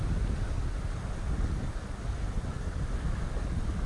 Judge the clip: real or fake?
real